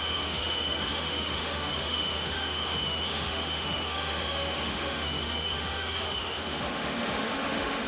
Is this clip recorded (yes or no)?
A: no